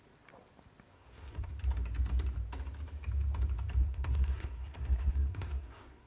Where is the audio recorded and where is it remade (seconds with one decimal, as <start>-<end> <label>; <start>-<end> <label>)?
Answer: 0.0-0.9 recorded; 0.9-1.5 remade; 1.5-3.8 recorded; 3.8-6.1 remade

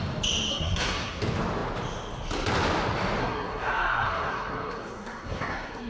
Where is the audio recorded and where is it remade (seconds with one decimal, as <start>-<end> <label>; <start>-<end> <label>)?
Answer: 0.0-0.5 recorded; 0.5-1.2 remade; 1.2-3.2 recorded; 3.2-5.9 remade

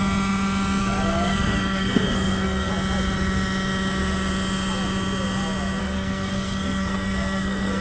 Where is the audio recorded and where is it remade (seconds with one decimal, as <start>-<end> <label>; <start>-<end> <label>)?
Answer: 0.0-0.8 recorded; 0.8-2.7 remade; 2.7-5.8 recorded; 5.8-7.8 remade

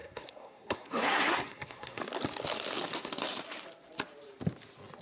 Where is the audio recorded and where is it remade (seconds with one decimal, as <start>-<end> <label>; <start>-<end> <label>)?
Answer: 0.0-2.0 remade; 2.0-5.0 recorded

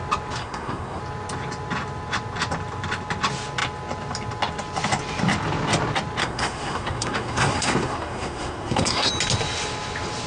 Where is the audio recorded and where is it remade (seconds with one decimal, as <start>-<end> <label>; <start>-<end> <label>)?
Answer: 0.0-0.4 recorded; 0.4-1.0 remade; 1.0-6.2 recorded; 6.2-9.1 remade; 9.1-10.3 recorded

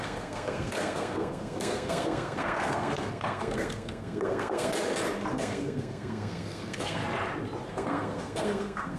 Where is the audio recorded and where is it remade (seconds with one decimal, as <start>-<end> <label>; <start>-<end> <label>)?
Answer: 0.0-4.7 remade; 4.7-5.3 recorded; 5.3-7.0 remade; 7.0-7.7 recorded; 7.7-9.0 remade